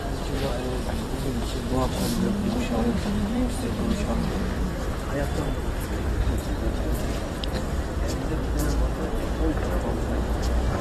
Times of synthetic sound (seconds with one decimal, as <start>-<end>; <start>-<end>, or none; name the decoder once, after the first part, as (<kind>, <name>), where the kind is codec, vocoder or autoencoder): 2.4-7.0 (vocoder, BigVGAN v2)